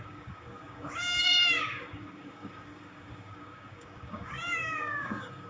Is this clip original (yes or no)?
no